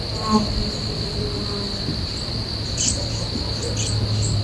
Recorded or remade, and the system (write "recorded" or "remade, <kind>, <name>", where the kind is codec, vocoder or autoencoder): recorded